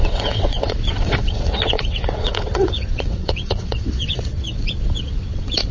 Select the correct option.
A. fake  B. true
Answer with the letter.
A